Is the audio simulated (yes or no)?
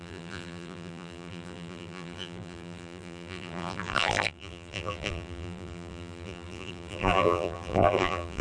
yes